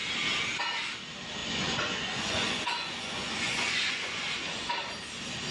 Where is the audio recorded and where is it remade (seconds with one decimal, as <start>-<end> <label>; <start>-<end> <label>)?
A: 0.0-1.4 recorded; 1.4-4.7 remade; 4.7-5.5 recorded